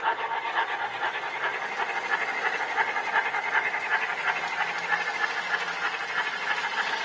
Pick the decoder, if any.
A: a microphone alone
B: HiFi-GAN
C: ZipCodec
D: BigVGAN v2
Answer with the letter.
A